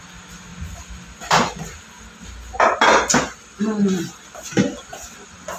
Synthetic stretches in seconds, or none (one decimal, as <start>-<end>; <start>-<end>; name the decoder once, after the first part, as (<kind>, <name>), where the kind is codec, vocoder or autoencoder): 0.5-1.9 (vocoder, BigVGAN v2)